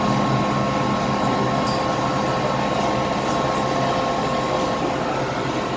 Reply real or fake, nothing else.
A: real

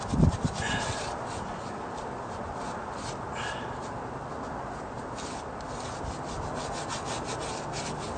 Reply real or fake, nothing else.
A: real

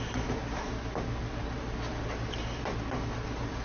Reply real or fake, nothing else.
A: real